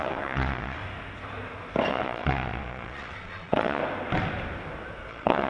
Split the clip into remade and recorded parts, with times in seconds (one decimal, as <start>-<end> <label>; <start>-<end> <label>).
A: 0.0-0.8 remade; 0.8-1.9 recorded; 1.9-3.8 remade; 3.8-5.1 recorded; 5.1-5.5 remade

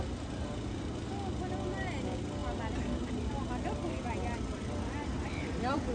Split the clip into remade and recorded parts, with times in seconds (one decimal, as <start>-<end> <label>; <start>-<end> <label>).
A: 0.0-5.9 recorded

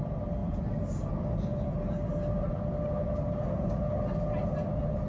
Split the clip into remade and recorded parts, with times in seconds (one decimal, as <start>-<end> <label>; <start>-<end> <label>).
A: 0.0-5.1 recorded